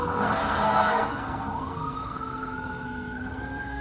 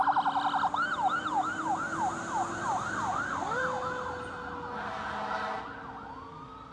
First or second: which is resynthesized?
first